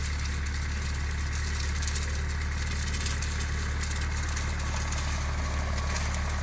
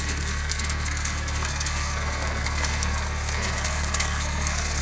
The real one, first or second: first